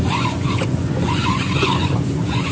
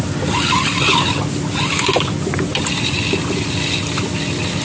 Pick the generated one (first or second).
first